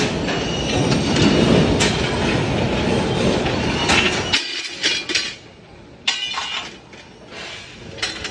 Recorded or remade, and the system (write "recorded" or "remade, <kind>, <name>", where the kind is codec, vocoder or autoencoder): recorded